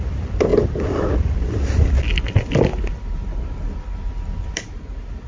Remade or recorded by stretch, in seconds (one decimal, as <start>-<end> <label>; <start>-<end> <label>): 0.0-5.3 recorded